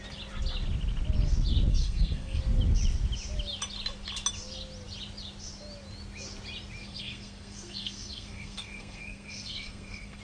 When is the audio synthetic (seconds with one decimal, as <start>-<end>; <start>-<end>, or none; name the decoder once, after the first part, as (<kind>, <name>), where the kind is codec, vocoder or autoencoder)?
1.7-2.4 (codec, SNAC); 6.8-10.2